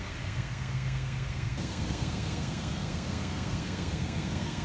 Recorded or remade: remade